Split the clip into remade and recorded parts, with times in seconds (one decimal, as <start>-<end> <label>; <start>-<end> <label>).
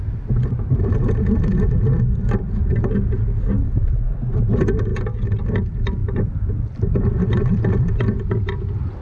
0.0-9.0 recorded